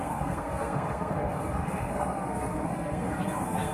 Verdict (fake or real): fake